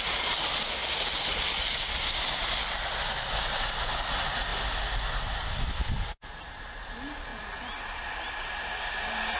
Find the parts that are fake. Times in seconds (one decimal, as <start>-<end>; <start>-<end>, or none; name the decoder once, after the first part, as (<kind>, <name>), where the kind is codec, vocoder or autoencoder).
none